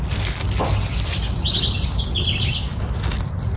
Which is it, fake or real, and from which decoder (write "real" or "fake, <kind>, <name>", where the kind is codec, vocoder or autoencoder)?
real